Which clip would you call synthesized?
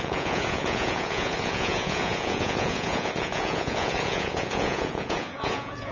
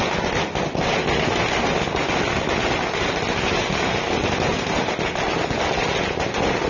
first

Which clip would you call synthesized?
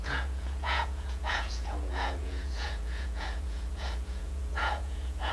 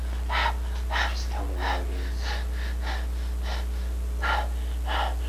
first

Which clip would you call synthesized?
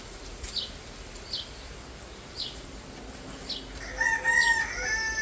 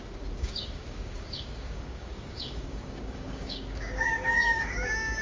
second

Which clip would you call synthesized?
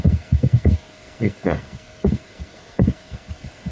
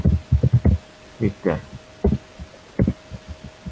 first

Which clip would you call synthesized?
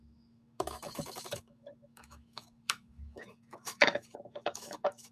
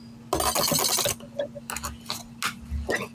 first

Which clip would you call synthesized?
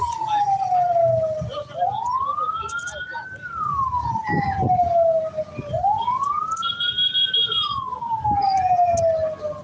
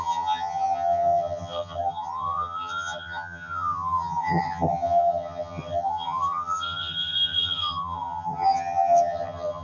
second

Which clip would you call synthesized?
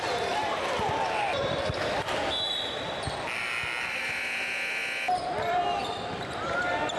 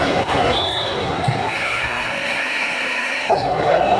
second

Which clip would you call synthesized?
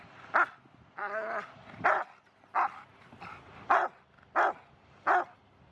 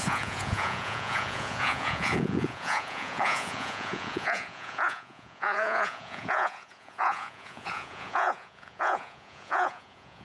second